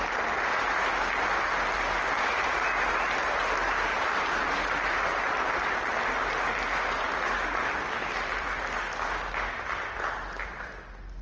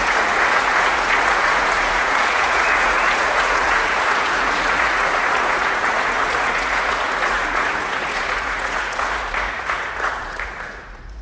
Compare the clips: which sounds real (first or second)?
first